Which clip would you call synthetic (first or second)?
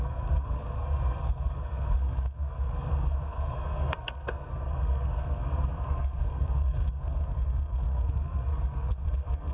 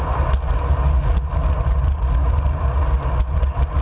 first